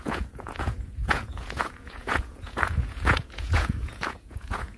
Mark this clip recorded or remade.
remade